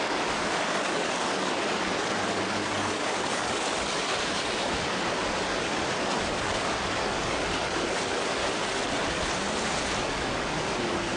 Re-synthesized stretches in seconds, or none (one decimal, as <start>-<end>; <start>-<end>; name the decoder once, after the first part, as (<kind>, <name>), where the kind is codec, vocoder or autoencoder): 0.0-8.4 (codec, DAC); 10.0-11.2